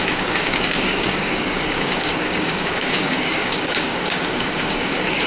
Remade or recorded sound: remade